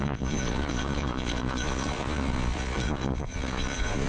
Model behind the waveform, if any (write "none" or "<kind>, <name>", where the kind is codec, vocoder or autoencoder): vocoder, Vocos